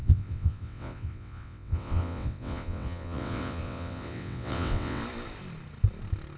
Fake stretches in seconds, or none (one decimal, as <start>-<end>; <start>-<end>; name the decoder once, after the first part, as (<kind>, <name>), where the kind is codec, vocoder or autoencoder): 0.0-5.0 (vocoder, WaveNeXt)